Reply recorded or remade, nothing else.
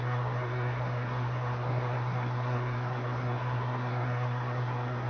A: remade